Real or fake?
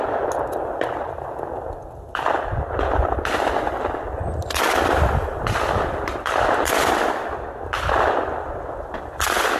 real